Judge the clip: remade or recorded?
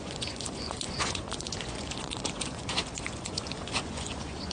remade